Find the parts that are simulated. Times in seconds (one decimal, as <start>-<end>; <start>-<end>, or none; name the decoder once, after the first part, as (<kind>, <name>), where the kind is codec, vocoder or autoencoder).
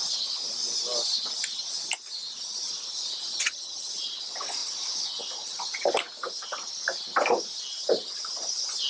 3.3-3.9 (vocoder, HiFi-GAN)